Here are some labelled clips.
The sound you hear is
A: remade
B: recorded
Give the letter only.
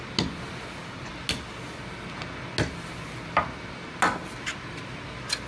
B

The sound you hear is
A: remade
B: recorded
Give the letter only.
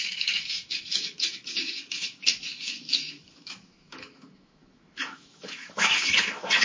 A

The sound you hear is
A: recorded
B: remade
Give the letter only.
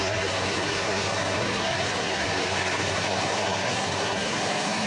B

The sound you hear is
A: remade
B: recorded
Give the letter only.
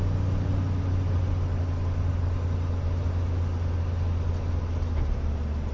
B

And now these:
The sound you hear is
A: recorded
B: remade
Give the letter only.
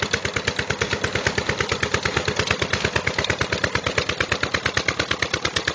A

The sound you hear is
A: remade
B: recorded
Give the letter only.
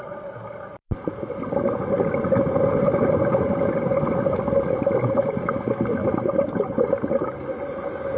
B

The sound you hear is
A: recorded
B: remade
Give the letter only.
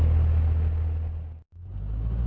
A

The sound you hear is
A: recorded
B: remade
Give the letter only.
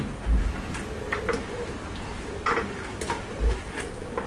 A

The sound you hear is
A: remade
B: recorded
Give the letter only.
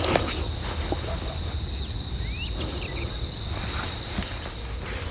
B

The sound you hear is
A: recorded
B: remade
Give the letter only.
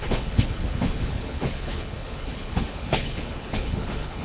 B